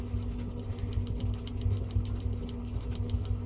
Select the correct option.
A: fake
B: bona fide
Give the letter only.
B